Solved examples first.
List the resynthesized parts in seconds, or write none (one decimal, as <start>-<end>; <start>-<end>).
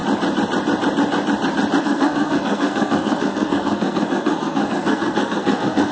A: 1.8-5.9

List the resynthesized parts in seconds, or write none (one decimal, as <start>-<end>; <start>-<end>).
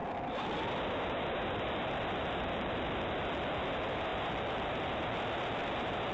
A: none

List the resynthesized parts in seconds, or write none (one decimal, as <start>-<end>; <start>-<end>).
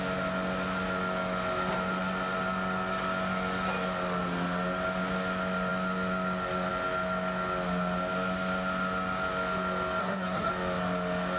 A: 10.0-10.5